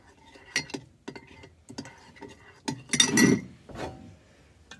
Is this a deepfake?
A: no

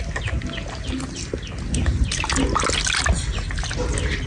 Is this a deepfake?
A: no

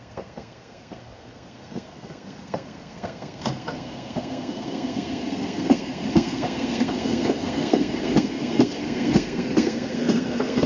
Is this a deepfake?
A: yes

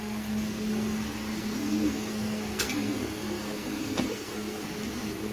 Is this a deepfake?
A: yes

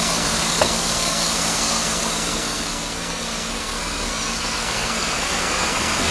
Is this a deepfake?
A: yes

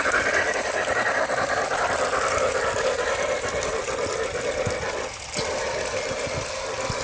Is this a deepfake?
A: no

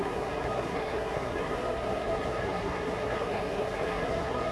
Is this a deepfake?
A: yes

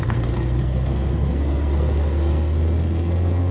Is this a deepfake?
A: yes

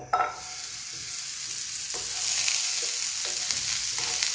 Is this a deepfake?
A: no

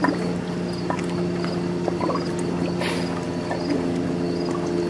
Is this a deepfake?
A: no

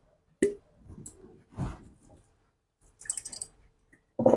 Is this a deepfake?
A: no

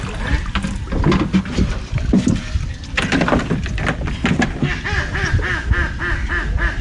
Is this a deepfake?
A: no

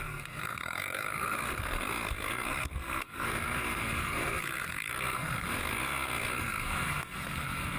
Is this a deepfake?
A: yes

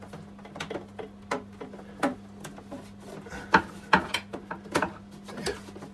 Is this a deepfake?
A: no